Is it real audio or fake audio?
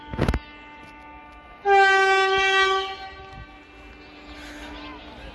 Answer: real